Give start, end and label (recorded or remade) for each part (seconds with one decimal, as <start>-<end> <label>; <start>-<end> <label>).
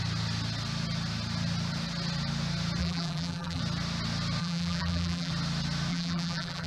0.0-2.8 recorded; 2.8-3.6 remade; 3.6-4.4 recorded; 4.4-5.3 remade; 5.3-5.9 recorded; 5.9-6.7 remade